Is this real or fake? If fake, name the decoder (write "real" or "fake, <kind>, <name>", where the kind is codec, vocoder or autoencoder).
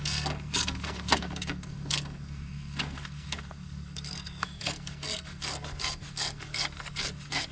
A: fake, codec, SNAC